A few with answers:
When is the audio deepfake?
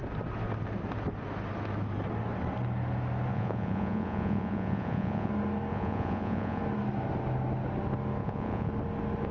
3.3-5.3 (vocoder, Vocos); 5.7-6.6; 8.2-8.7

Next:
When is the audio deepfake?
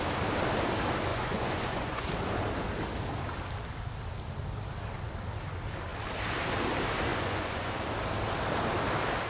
1.1-2.1 (vocoder, Vocos); 7.1-7.7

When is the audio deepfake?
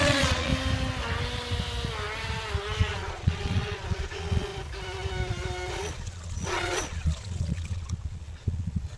0.0-0.5 (vocoder, Vocos); 2.8-4.5; 5.7-9.0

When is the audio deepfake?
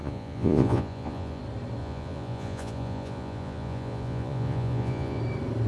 0.0-1.4 (vocoder, Vocos); 1.8-5.2